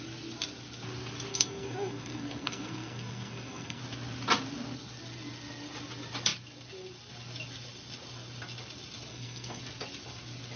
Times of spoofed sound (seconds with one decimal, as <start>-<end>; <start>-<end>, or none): 1.3-3.8; 9.1-9.6